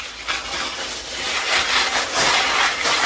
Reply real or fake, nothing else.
real